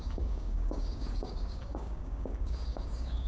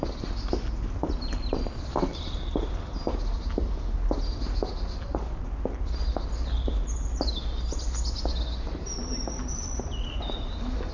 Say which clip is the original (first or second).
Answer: second